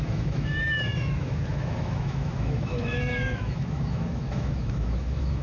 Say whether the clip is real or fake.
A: fake